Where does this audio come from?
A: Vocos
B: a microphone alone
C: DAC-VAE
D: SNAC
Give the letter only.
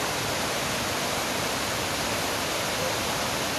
B